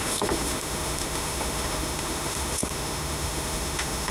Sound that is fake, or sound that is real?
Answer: fake